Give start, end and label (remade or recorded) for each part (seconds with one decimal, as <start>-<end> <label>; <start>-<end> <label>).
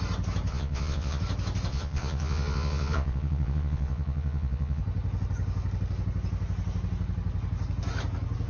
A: 0.0-0.5 recorded; 0.5-1.2 remade; 1.2-1.7 recorded; 1.7-4.8 remade; 4.8-8.5 recorded